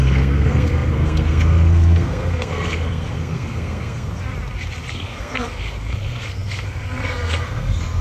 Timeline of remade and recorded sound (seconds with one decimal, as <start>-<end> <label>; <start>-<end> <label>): 0.0-4.2 remade; 4.2-4.9 recorded; 4.9-8.0 remade